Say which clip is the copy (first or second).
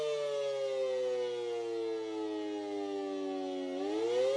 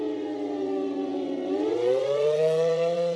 second